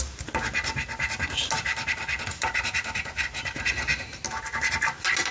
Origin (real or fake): real